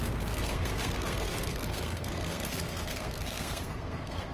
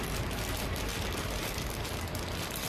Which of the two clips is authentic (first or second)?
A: second